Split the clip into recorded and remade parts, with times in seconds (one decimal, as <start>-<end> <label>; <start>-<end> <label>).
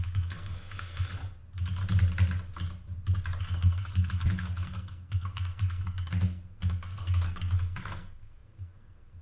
0.0-1.2 remade; 1.2-3.4 recorded; 3.4-9.2 remade